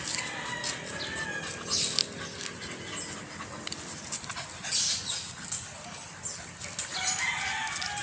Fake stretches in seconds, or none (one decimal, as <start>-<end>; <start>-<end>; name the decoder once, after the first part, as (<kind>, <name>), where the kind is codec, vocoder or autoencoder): none